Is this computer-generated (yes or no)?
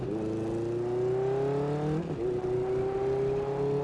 no